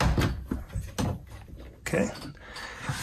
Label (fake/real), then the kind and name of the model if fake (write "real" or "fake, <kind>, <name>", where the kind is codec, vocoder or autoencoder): real